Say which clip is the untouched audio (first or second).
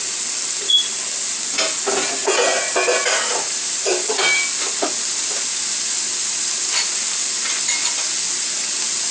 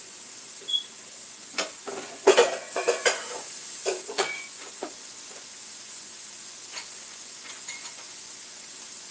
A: first